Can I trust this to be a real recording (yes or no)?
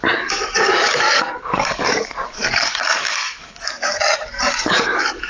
no